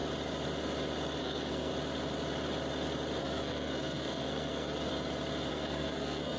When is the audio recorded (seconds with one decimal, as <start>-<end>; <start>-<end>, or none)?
0.0-1.2; 1.7-3.2; 4.9-5.5

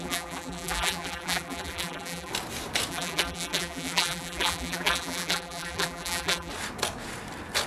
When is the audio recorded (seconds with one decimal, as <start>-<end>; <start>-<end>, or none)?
2.3-2.9; 6.5-7.7

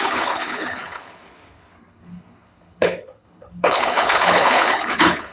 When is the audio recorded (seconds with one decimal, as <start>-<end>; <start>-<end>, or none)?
none

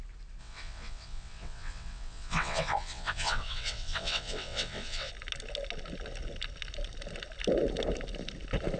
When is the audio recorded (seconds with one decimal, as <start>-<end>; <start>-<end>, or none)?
0.0-0.4; 5.1-8.8

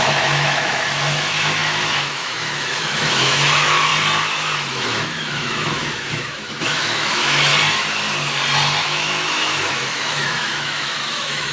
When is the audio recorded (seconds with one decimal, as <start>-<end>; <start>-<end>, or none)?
3.9-4.7; 7.5-8.8